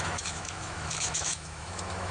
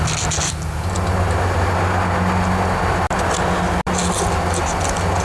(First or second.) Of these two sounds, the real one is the second